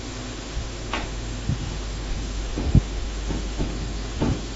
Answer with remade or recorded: remade